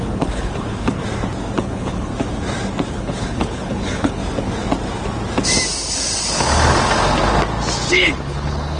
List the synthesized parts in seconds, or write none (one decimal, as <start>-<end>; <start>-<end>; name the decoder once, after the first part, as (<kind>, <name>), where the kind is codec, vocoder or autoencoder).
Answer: 0.0-1.0 (codec, HILCodec); 1.6-2.1; 2.9-4.2; 7.9-8.8

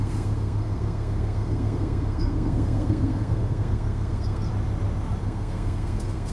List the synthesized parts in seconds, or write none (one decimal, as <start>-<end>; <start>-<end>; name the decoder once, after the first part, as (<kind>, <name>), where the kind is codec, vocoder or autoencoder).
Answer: 0.0-4.5 (codec, SNAC); 5.2-6.3

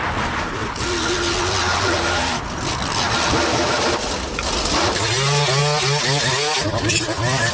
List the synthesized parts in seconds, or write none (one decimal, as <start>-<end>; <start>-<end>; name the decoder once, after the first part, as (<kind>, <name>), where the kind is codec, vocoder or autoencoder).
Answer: none

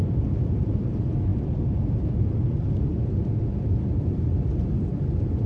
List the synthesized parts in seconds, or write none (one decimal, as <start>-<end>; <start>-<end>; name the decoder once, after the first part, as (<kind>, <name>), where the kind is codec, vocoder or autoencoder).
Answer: 0.0-1.3 (vocoder, BigVGAN v2); 2.0-2.9; 3.5-5.5

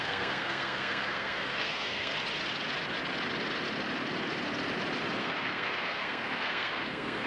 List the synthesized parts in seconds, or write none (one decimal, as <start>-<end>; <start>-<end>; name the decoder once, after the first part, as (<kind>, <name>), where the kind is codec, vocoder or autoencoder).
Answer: 0.0-2.1 (codec, SNAC); 5.2-7.3

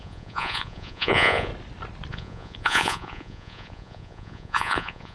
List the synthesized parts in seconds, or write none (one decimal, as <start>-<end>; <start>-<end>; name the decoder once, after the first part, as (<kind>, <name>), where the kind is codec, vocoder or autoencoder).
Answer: 0.0-1.5 (vocoder, Vocos); 2.1-5.1